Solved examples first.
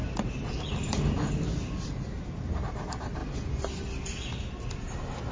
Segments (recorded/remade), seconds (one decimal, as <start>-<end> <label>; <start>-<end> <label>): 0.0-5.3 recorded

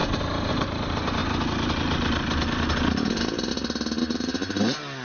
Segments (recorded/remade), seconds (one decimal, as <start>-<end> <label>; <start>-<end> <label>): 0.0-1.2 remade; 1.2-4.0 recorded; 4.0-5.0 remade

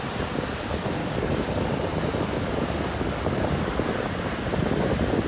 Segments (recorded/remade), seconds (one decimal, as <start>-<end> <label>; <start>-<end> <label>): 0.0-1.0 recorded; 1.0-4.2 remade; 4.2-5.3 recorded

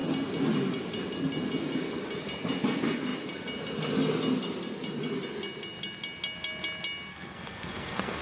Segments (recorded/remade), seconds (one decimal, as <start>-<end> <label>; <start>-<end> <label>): 0.0-7.1 recorded; 7.1-8.2 remade